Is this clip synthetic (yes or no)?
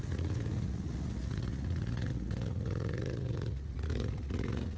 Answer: yes